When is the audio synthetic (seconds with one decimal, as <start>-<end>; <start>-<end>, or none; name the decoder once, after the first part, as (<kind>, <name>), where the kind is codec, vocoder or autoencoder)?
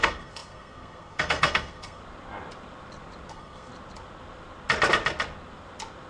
0.0-2.0 (codec, SNAC); 3.3-3.7